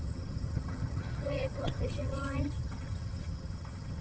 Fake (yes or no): yes